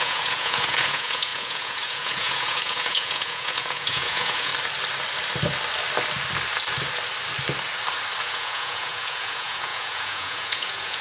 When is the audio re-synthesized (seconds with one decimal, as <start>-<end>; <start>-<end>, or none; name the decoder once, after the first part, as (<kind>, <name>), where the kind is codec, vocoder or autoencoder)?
0.0-4.5 (vocoder, Vocos); 8.2-11.0